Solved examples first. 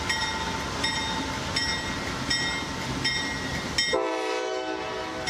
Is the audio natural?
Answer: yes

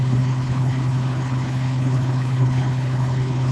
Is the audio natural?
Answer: no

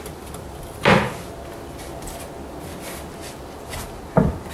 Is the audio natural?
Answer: yes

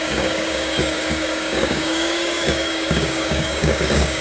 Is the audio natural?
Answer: no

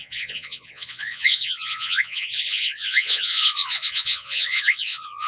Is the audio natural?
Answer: no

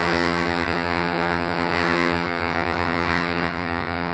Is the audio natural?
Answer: no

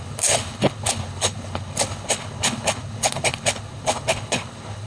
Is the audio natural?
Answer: no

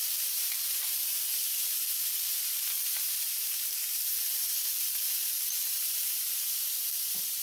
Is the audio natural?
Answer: no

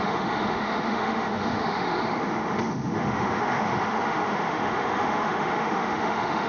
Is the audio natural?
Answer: no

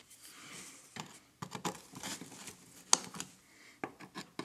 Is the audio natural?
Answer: yes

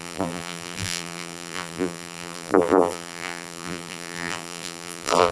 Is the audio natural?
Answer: no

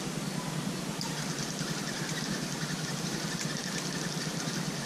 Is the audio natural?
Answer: yes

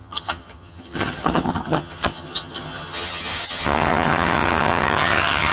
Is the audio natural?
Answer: no